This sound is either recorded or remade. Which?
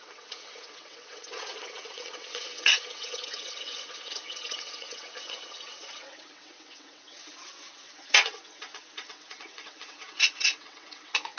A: remade